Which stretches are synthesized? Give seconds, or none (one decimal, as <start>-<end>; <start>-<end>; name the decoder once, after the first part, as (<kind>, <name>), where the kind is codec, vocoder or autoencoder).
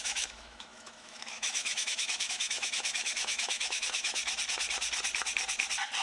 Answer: 0.0-4.2 (autoencoder, DAC-VAE)